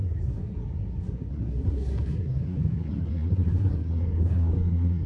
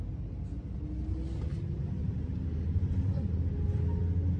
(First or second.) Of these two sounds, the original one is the second